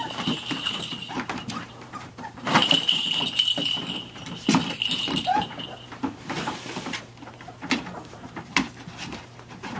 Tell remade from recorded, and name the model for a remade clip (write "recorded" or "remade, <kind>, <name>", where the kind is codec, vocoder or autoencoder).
remade, vocoder, BigVGAN v2